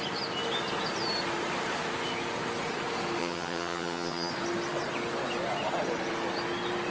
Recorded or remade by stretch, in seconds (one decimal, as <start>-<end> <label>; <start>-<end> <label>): 0.0-3.2 recorded; 3.2-4.3 remade; 4.3-6.9 recorded